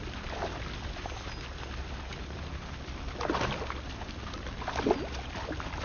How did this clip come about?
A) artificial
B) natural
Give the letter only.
B